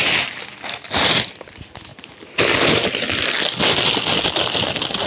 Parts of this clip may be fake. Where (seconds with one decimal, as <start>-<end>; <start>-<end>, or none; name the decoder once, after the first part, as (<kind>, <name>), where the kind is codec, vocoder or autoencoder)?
none